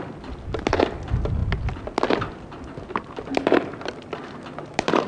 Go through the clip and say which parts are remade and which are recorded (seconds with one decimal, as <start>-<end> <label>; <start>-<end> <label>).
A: 0.0-5.1 recorded